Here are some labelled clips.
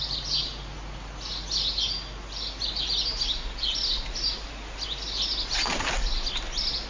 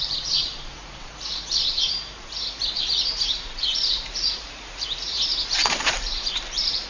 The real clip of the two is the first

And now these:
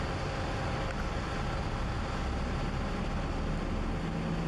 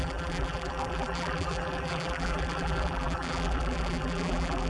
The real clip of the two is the first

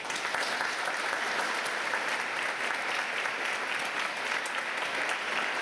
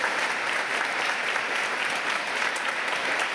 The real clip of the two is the first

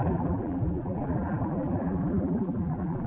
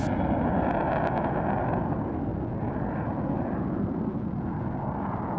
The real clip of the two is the second